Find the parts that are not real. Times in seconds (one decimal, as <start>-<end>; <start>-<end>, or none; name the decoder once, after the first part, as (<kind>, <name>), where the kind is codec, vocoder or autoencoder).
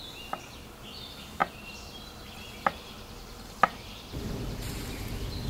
1.4-4.7 (vocoder, BigVGAN v2)